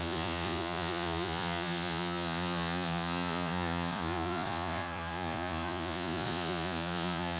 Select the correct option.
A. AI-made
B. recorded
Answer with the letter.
A